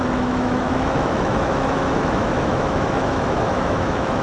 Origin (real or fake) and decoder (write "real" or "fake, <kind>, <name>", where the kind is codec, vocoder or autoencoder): fake, autoencoder, DAC-VAE